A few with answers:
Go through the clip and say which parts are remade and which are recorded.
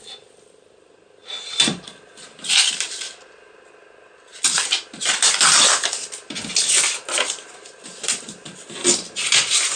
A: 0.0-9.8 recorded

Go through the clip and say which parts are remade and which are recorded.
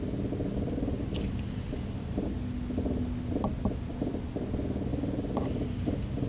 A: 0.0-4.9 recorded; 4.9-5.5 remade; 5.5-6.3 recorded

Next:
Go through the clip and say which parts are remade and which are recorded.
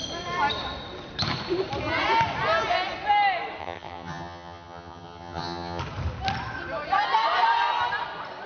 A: 0.0-3.6 recorded; 3.6-5.8 remade; 5.8-8.5 recorded